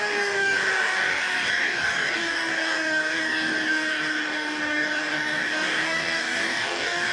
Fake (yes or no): yes